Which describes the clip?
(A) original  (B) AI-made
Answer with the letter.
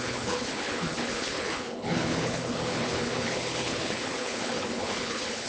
B